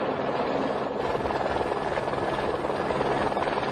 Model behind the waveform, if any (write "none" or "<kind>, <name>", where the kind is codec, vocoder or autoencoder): none